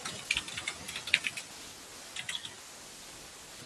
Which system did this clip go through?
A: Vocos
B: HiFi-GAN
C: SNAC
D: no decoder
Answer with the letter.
D